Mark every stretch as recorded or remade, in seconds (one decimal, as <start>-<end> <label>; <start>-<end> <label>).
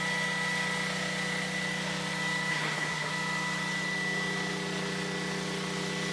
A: 0.0-2.5 recorded; 2.5-3.1 remade; 3.1-6.1 recorded